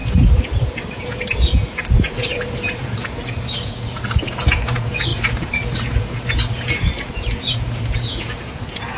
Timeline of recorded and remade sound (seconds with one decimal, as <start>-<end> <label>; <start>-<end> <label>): 0.0-9.0 remade